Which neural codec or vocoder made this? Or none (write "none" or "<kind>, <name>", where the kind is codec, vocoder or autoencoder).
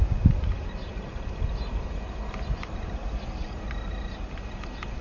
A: none